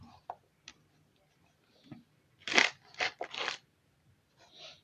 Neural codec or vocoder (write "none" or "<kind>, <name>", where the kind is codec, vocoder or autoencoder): none